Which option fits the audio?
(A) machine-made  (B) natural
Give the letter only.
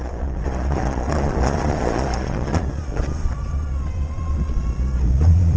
A